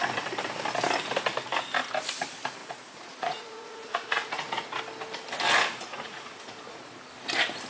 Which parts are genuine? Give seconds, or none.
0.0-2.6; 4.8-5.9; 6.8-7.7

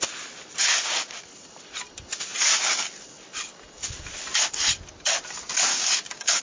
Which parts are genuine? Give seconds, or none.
0.0-0.7; 1.2-5.7

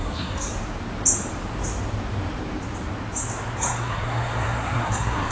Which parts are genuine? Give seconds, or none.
0.5-3.6